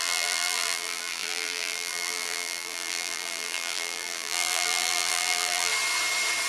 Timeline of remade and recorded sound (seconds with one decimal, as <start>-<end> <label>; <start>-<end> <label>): 0.0-5.7 remade; 5.7-6.5 recorded